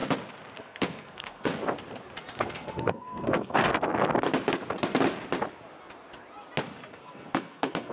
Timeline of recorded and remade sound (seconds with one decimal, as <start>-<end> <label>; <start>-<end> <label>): 0.0-0.6 recorded; 0.6-1.5 remade; 1.5-2.4 recorded; 2.4-3.7 remade; 3.7-6.9 recorded; 6.9-7.9 remade